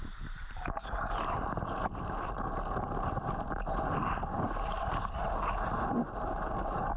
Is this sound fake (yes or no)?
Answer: no